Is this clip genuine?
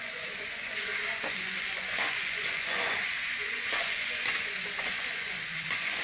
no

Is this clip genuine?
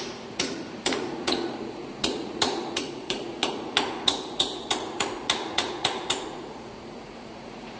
no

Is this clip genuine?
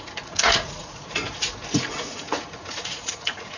no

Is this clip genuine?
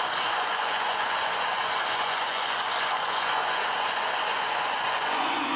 no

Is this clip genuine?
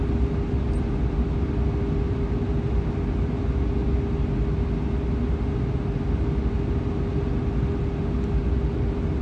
yes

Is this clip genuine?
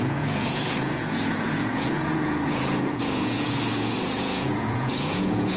no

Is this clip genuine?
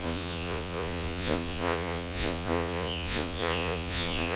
no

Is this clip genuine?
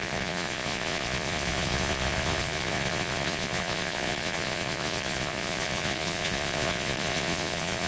no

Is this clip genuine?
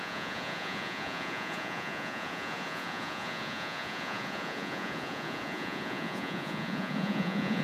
no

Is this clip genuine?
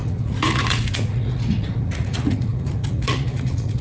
no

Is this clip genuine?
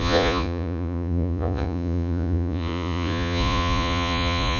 no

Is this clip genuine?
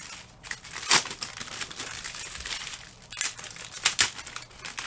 yes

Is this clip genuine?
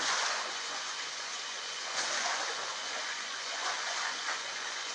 no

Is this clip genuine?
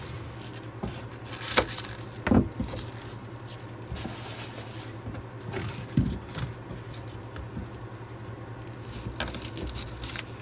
yes